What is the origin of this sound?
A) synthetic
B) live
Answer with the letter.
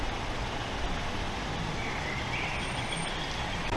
B